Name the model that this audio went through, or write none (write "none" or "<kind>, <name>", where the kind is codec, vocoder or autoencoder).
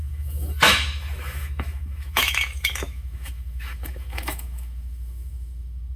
autoencoder, DAC-VAE